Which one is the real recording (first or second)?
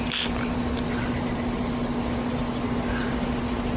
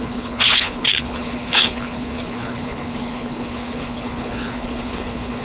first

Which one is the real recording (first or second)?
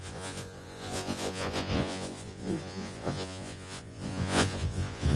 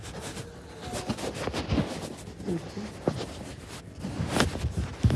second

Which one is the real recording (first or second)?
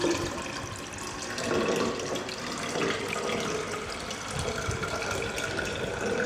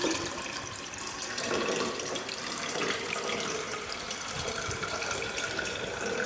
first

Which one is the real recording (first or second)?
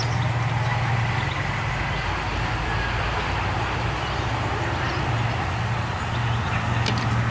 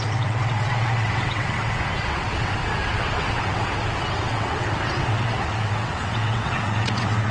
first